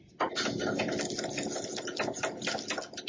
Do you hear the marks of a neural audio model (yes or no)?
no